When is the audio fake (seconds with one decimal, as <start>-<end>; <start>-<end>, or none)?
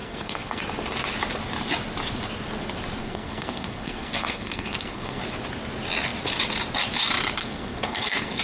0.0-0.6; 3.0-5.2; 7.4-8.4